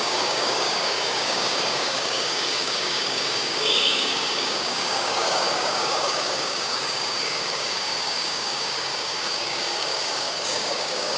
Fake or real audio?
fake